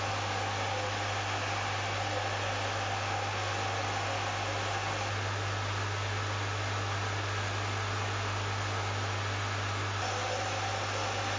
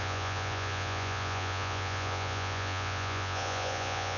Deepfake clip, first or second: second